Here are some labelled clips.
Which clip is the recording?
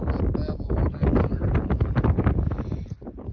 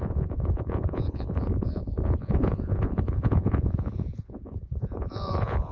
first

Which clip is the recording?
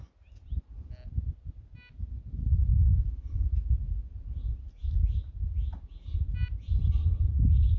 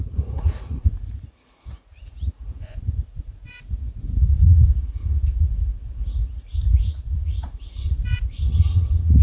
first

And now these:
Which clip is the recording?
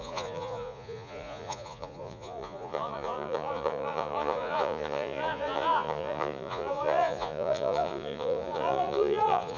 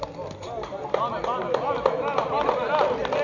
second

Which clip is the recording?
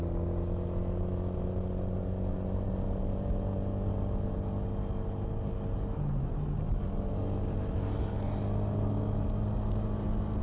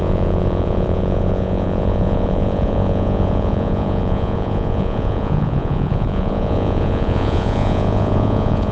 first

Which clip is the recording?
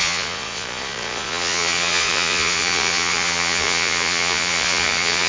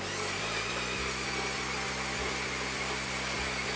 second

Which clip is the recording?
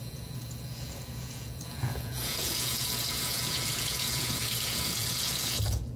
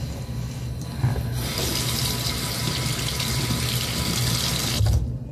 second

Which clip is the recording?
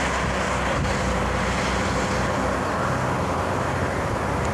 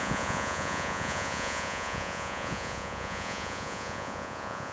first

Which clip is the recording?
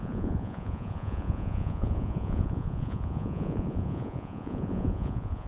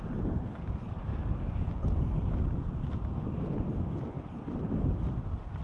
second